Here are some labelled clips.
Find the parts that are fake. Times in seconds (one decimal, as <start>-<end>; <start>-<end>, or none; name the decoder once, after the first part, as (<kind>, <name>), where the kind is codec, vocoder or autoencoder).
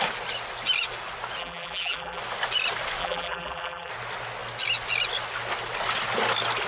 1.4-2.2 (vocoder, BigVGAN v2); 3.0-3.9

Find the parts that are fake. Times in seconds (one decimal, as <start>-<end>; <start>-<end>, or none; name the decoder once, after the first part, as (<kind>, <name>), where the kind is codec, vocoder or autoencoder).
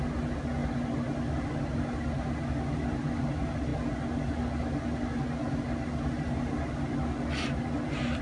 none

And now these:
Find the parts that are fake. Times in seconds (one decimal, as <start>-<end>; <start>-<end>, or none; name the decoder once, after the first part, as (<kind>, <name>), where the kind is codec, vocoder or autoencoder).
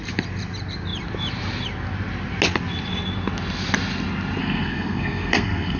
4.4-5.8 (codec, SNAC)